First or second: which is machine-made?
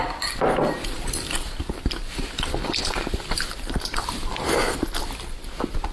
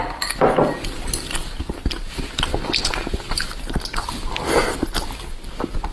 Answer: first